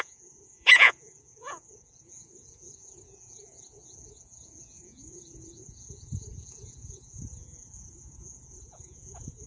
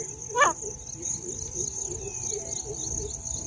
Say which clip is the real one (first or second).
second